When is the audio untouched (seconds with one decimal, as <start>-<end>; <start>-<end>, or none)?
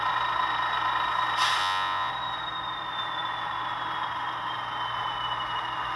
0.0-1.6; 2.1-6.0